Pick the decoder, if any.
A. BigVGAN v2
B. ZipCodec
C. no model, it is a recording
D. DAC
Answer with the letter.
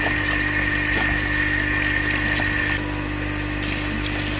C